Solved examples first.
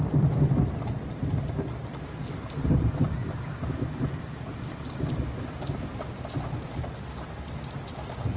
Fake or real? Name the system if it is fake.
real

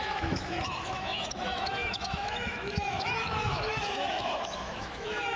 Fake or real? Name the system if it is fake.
fake, autoencoder, DAC-VAE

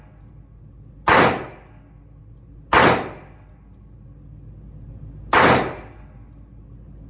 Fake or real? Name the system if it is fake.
real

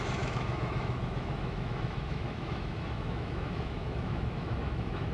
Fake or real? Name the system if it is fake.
fake, autoencoder, DAC-VAE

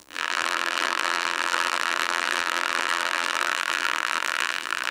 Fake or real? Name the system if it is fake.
fake, vocoder, BigVGAN v2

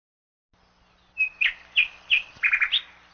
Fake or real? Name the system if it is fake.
real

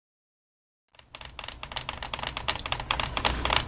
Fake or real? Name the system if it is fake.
real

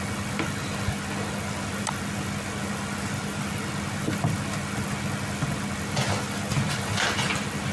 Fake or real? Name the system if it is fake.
real